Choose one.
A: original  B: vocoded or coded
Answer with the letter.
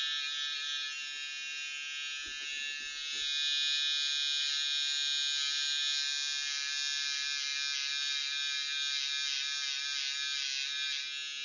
A